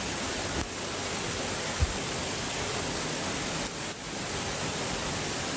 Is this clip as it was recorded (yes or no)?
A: yes